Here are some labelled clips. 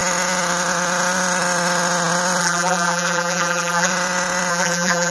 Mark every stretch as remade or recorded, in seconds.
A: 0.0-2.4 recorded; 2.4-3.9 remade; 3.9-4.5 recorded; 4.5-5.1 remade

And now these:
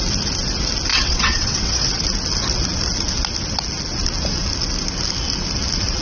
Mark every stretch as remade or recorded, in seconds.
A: 0.0-0.9 recorded; 0.9-2.0 remade; 2.0-6.0 recorded